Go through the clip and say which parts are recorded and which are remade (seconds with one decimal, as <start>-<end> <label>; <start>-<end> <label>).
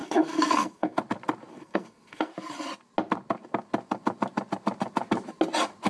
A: 0.0-1.0 remade; 1.0-1.5 recorded; 1.5-2.3 remade; 2.3-5.9 recorded